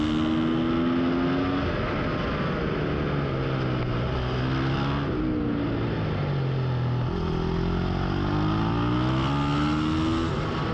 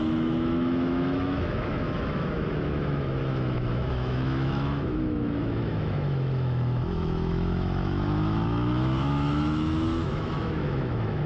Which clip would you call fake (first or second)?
second